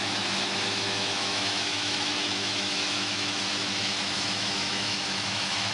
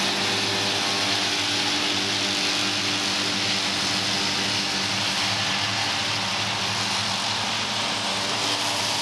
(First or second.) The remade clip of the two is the first